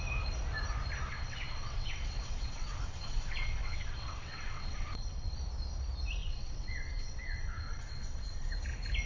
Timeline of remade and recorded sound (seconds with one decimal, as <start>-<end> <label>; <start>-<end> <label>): 0.0-1.1 recorded; 1.1-5.4 remade; 5.4-6.2 recorded; 6.2-8.5 remade; 8.5-9.1 recorded